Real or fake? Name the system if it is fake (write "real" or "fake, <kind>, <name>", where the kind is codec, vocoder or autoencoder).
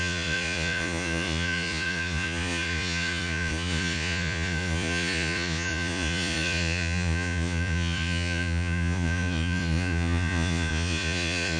fake, vocoder, Vocos